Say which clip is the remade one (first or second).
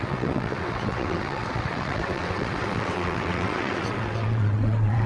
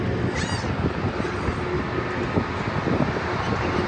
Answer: first